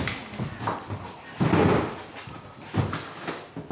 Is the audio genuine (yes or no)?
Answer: yes